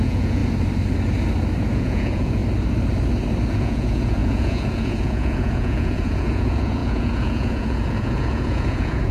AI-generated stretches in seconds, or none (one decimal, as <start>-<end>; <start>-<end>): 0.0-0.4; 1.7-2.4; 3.5-9.1